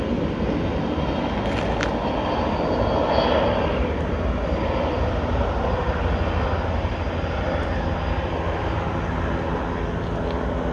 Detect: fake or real real